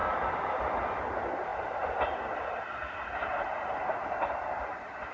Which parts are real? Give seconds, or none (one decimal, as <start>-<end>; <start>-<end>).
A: 0.6-5.1

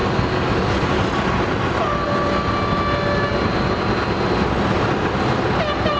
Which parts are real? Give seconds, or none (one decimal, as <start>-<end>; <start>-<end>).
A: 0.0-6.0

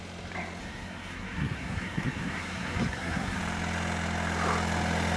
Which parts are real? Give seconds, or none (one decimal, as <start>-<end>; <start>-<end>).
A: 0.0-0.6; 3.4-5.2

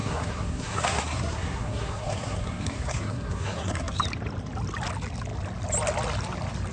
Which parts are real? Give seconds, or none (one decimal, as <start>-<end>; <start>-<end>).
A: 4.0-6.7

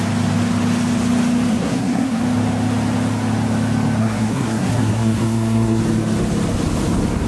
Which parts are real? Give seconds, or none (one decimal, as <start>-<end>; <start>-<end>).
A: 0.0-1.5; 2.2-4.0; 5.8-7.3